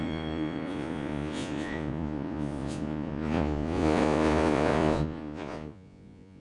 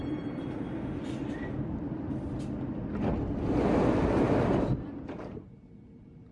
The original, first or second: second